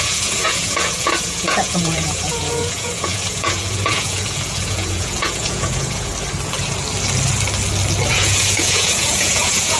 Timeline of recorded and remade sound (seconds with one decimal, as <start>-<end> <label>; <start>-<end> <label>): 0.0-6.1 remade; 6.1-8.1 recorded; 8.1-9.8 remade